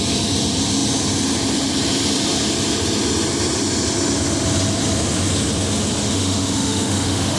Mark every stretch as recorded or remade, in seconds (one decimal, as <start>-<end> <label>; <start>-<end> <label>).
0.0-6.0 recorded; 6.0-7.4 remade